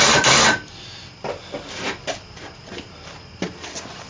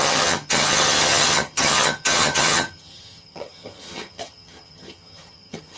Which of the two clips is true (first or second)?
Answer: first